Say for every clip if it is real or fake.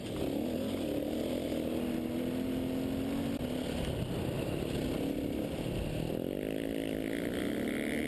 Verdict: real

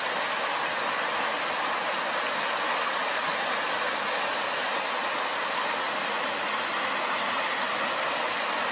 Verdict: real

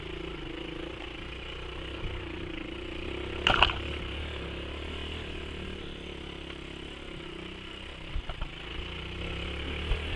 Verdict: real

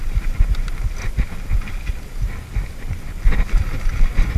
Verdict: real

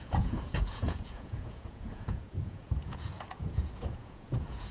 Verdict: fake